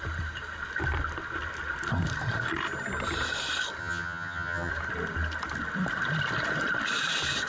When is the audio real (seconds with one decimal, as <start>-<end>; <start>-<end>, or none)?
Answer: 0.0-3.8; 4.7-7.5